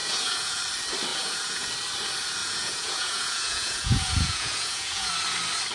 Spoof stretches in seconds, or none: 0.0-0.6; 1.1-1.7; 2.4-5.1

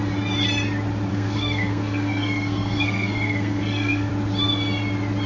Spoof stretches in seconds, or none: 1.1-4.1